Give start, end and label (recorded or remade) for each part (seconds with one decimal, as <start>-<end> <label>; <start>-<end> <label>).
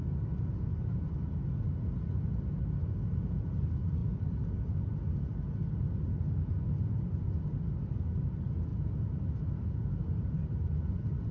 0.0-11.3 recorded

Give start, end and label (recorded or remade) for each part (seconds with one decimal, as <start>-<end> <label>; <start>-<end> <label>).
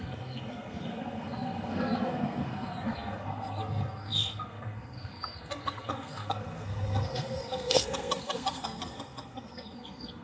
0.0-10.2 remade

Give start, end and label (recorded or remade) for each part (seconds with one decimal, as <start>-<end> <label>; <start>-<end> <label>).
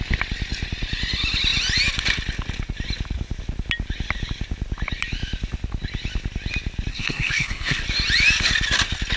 0.0-6.9 recorded; 6.9-7.8 remade; 7.8-9.2 recorded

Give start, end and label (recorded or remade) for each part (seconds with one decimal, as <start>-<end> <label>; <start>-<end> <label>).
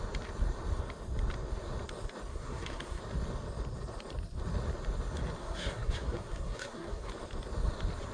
0.0-2.3 recorded; 2.3-3.0 remade; 3.0-5.4 recorded; 5.4-7.1 remade; 7.1-8.1 recorded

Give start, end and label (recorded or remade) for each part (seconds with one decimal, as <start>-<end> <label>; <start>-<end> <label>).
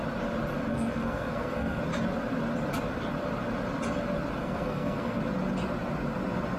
0.0-0.7 recorded; 0.7-1.8 remade; 1.8-4.4 recorded; 4.4-5.2 remade; 5.2-6.6 recorded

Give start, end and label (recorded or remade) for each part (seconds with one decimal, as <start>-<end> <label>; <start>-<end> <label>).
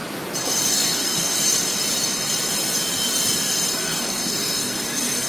0.0-0.7 recorded; 0.7-1.3 remade; 1.3-3.5 recorded; 3.5-5.3 remade